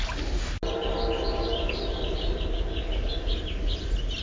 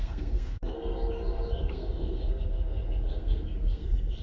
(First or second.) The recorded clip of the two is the first